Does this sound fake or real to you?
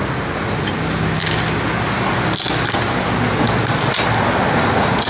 real